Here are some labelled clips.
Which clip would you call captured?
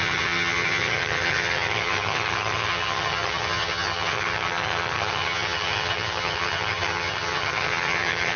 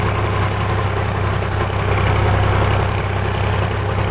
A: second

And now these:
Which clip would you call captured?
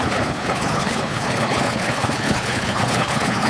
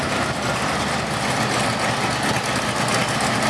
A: second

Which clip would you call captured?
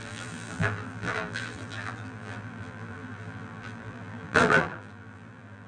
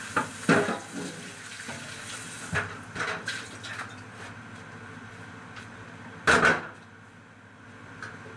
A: second